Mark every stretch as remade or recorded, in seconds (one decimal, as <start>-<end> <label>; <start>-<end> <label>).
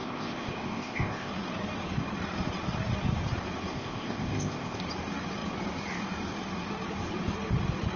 0.0-1.3 remade; 1.3-3.7 recorded; 3.7-4.8 remade; 4.8-8.0 recorded